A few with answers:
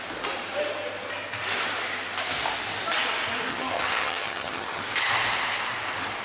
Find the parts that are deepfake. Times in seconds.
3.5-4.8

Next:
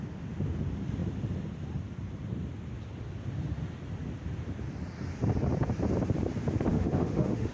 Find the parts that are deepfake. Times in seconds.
6.7-7.5

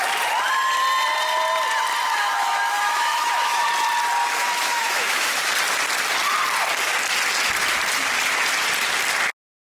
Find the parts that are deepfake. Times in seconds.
2.2-3.6; 4.2-5.5

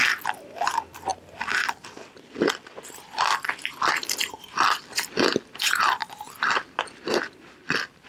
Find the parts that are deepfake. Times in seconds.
none